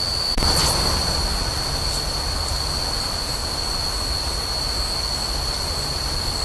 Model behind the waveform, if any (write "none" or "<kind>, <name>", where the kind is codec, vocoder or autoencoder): none